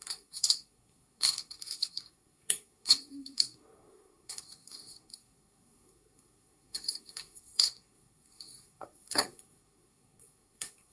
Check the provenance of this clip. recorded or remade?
remade